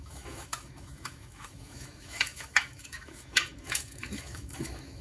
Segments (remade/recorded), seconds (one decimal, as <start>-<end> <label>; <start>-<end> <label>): 0.0-5.0 remade